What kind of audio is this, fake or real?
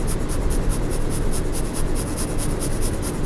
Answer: fake